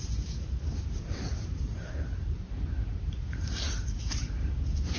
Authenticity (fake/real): fake